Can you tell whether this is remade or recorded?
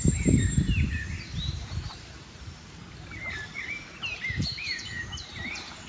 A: remade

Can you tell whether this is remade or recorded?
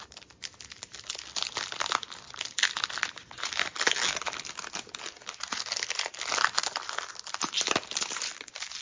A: recorded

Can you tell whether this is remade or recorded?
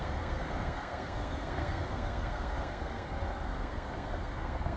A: remade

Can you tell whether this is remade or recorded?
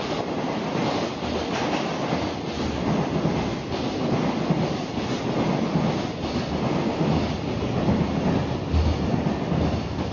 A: recorded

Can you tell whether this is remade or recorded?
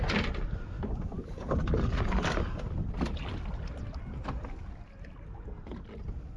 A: recorded